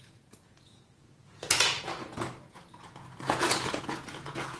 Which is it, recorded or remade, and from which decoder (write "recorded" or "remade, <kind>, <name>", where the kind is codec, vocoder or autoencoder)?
remade, vocoder, Vocos